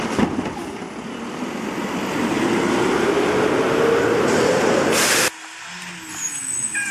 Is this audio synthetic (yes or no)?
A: no